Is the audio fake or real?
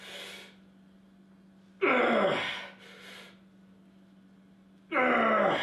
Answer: real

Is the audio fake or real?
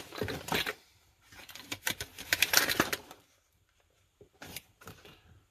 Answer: fake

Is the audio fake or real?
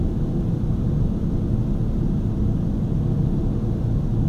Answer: real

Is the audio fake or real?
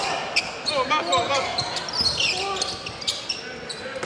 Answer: real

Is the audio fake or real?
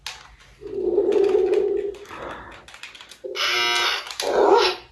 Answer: real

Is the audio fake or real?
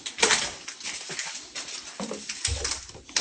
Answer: fake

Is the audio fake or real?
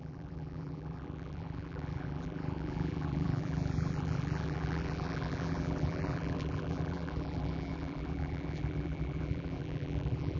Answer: fake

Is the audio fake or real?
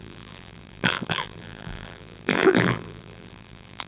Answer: fake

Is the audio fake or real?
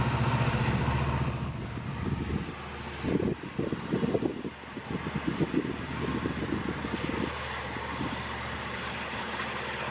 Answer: real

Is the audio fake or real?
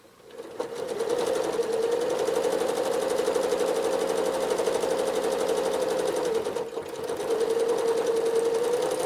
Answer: real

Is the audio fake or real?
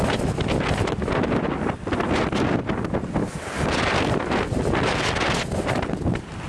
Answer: real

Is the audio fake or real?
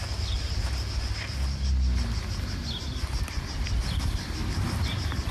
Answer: real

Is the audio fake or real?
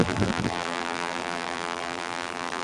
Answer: fake